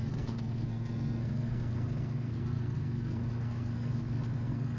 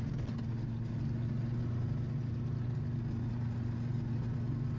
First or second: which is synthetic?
first